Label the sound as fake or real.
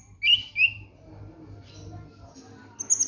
real